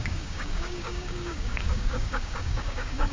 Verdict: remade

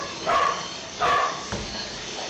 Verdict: remade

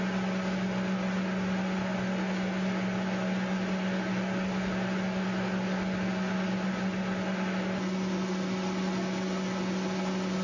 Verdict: recorded